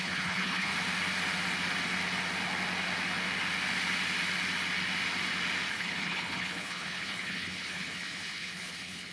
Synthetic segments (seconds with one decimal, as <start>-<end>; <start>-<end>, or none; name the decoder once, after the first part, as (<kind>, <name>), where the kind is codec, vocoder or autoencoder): 0.0-0.7 (codec, HILCodec); 5.7-9.1